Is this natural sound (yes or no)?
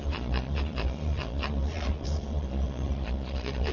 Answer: no